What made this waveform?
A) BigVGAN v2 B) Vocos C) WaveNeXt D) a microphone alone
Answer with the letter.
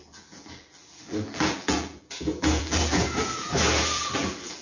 A